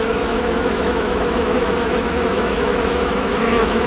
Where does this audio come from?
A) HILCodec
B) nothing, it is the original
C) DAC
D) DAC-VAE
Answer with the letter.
D